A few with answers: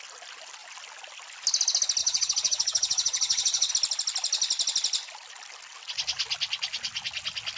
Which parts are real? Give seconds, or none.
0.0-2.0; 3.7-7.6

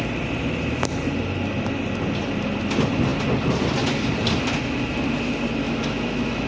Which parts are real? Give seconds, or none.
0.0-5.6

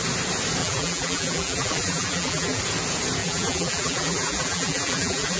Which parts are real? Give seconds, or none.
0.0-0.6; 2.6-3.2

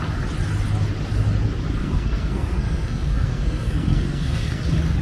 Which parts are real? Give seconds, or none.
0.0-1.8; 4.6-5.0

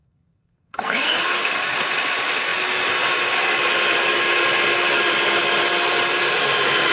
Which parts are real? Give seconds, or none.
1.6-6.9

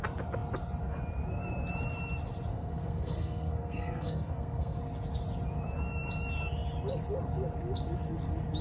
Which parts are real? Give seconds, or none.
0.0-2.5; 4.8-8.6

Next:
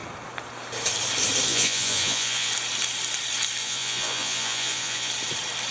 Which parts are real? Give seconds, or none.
0.0-1.5; 2.5-3.6; 5.1-5.7